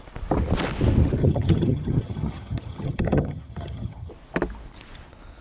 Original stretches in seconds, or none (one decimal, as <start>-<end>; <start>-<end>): 0.0-1.2; 4.1-5.4